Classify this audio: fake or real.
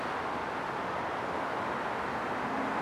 real